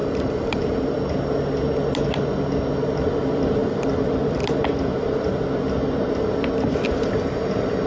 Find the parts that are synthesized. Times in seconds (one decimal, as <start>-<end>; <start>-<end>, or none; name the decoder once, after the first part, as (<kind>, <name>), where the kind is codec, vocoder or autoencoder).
0.0-0.6 (vocoder, BigVGAN v2); 3.6-4.5